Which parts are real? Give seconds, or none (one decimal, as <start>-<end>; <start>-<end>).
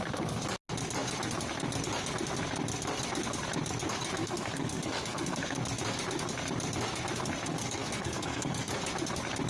0.0-4.2; 5.6-7.4; 8.7-9.5